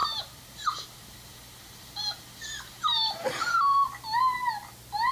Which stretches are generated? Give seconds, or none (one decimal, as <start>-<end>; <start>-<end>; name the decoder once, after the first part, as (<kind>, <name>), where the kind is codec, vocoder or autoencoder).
none